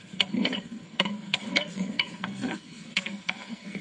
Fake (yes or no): yes